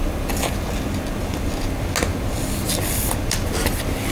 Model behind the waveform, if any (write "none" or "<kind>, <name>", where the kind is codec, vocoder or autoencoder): none